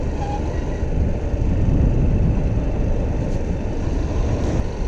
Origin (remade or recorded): recorded